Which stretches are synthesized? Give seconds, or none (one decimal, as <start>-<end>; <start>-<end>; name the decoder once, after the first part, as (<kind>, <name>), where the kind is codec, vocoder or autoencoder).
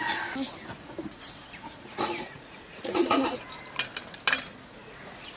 0.7-3.5 (vocoder, Vocos); 4.8-5.4